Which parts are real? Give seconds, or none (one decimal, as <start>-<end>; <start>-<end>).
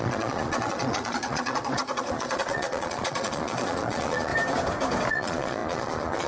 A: 4.3-5.1